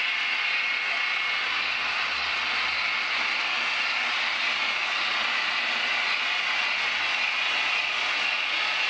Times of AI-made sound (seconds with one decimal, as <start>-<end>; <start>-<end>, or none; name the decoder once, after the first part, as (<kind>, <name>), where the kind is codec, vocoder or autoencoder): none